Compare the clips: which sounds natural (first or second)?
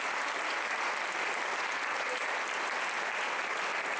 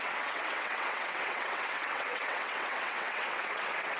first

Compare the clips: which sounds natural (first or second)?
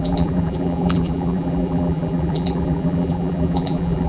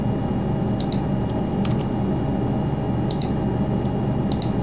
second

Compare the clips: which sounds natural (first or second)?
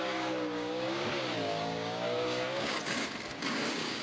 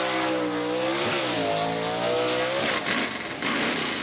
second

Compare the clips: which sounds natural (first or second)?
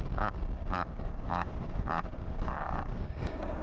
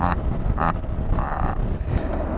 second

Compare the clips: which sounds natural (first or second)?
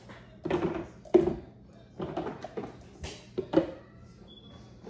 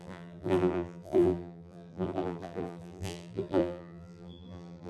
first